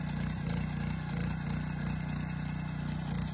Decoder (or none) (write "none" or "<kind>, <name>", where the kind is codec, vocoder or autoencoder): none